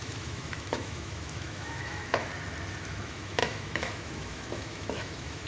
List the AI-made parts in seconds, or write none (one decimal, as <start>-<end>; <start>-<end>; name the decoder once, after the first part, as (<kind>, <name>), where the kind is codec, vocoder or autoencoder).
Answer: 0.0-2.3 (autoencoder, DAC-VAE); 2.8-5.5